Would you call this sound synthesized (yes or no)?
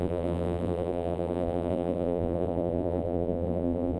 yes